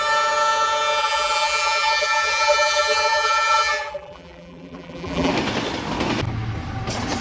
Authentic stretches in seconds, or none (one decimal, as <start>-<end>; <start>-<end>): 0.0-1.0; 5.3-7.2